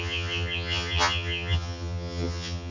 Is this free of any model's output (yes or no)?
no